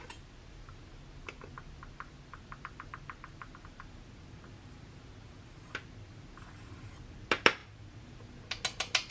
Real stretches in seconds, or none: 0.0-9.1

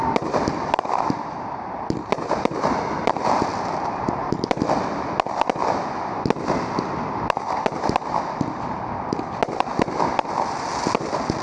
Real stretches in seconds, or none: 0.0-11.4

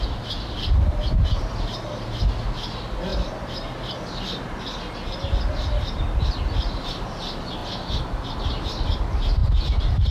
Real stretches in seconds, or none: 0.0-10.1

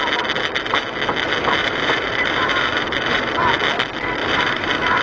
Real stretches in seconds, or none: 0.0-1.6; 3.3-4.2

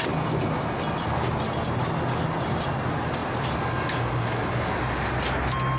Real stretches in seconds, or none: 0.0-5.8